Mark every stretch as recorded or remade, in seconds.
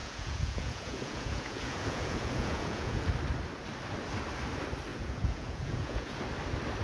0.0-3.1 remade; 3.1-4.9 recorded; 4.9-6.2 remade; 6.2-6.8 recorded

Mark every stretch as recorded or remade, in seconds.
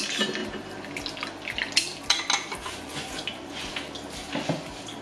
0.0-2.6 recorded; 2.6-3.7 remade; 3.7-5.0 recorded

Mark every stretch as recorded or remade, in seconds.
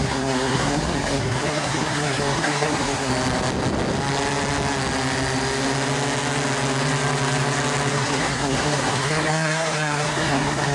0.0-3.1 remade; 3.1-7.9 recorded; 7.9-10.7 remade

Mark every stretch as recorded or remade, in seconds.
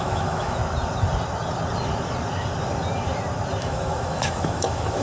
0.0-0.6 remade; 0.6-3.6 recorded; 3.6-5.0 remade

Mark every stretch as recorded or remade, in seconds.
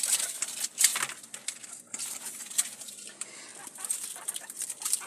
0.0-0.9 remade; 0.9-2.8 recorded; 2.8-5.1 remade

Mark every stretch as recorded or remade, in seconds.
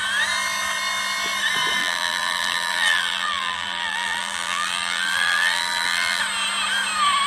0.0-1.8 recorded; 1.8-6.2 remade; 6.2-7.3 recorded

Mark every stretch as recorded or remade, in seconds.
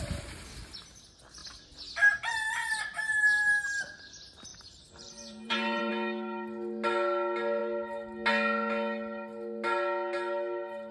0.0-4.5 recorded; 4.5-5.9 remade; 5.9-10.9 recorded